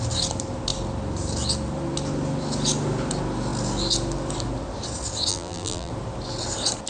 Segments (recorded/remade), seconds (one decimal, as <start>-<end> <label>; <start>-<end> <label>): 0.0-5.3 recorded; 5.3-5.9 remade; 5.9-6.9 recorded